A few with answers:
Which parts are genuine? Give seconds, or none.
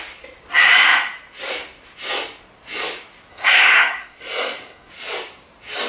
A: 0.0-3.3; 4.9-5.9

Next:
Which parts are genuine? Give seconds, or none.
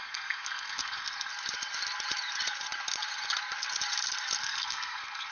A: 1.3-4.4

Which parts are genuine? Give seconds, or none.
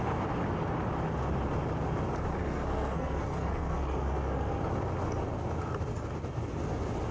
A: 0.0-2.4; 4.6-7.1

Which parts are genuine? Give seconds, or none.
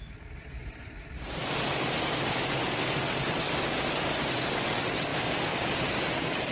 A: 0.0-6.5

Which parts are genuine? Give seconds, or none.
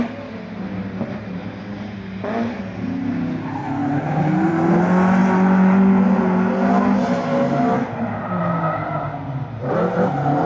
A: 0.0-3.8; 4.5-10.5